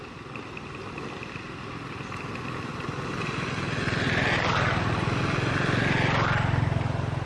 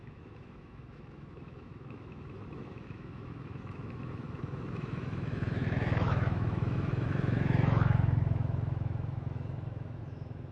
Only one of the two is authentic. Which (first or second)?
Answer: first